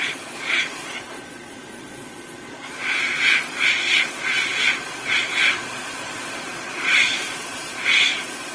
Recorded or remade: remade